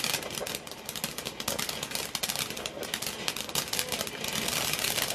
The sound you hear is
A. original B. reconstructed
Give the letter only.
A